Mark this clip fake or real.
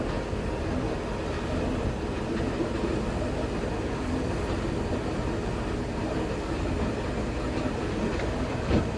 real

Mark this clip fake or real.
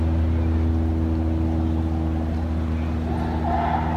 real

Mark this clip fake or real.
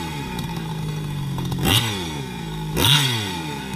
fake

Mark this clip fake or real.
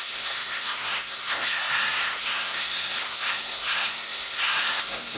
fake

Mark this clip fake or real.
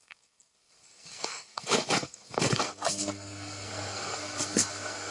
fake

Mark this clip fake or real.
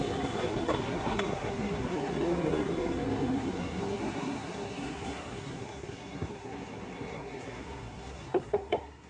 fake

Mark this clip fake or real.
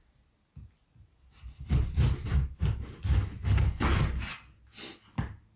real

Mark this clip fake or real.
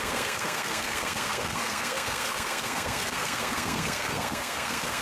fake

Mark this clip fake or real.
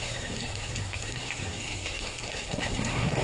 fake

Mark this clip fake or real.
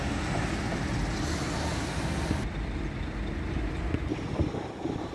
real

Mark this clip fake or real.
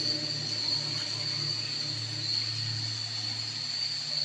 real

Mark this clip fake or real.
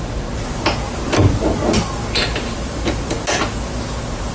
real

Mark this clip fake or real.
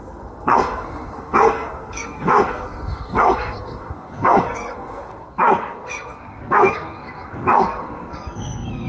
fake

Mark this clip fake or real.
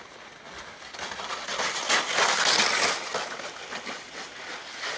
real